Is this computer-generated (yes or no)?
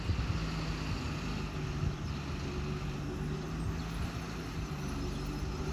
no